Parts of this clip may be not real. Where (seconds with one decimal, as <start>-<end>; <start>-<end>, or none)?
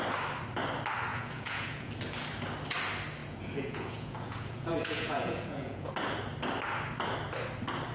1.1-1.9; 3.2-5.9